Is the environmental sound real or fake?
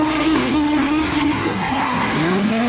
fake